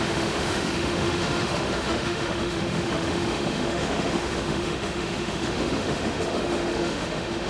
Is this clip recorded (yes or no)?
no